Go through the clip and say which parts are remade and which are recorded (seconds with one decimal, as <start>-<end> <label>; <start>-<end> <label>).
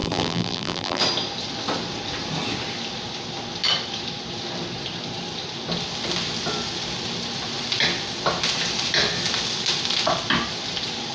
0.0-1.0 remade; 1.0-11.1 recorded